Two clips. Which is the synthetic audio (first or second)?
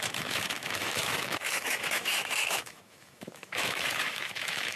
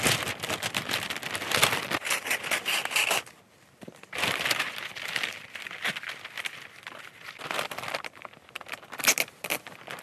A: first